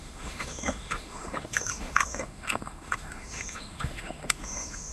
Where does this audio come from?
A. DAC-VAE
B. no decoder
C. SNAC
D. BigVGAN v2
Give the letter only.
A